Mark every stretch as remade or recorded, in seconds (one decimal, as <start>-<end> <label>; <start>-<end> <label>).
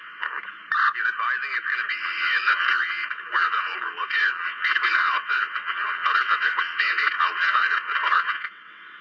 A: 0.0-0.4 remade; 0.4-1.9 recorded; 1.9-9.0 remade